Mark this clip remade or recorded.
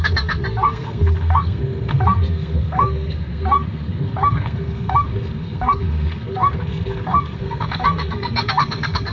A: remade